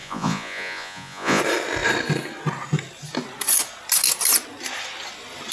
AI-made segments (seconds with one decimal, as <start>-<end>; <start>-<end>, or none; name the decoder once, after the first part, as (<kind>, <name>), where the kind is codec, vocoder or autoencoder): 0.0-1.4 (vocoder, Vocos)